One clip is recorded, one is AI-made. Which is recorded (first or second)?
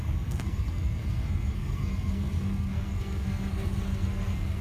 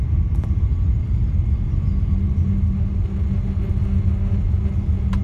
second